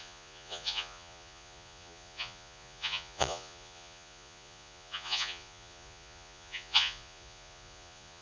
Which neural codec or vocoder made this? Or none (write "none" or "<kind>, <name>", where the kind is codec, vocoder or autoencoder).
vocoder, Vocos